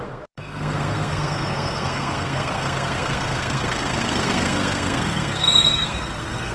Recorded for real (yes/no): no